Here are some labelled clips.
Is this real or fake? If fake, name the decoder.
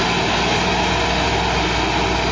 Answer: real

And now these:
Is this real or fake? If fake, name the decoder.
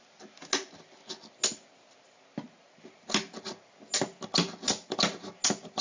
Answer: real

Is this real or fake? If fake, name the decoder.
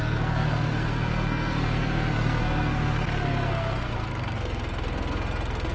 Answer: fake, codec, SNAC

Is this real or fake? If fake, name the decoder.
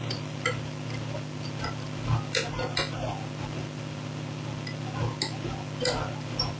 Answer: real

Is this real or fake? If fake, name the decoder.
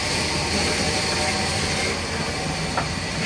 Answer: real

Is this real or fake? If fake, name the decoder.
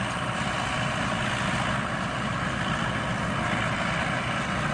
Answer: real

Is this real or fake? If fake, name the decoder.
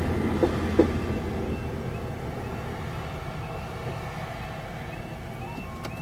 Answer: real